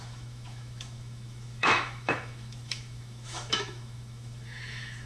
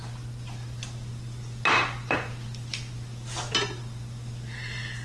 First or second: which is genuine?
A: second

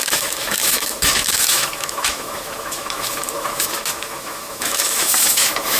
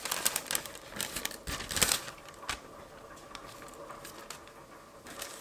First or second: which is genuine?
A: second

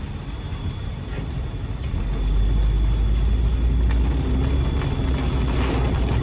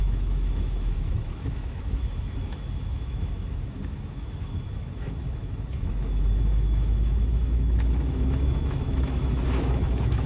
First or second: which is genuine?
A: first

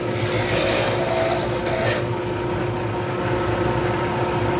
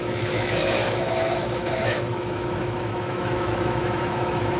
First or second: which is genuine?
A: first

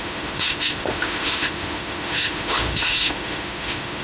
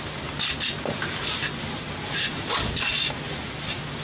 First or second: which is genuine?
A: second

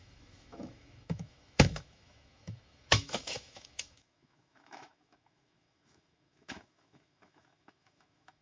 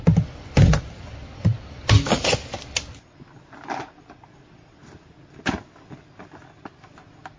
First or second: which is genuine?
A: second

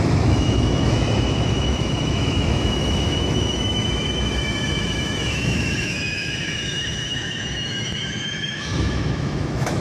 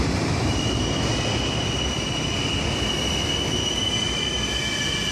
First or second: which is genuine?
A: second